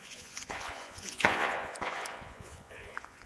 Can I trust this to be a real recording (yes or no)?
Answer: no